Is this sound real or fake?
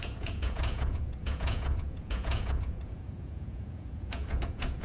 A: fake